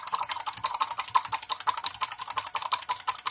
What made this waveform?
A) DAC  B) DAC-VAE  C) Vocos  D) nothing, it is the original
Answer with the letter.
D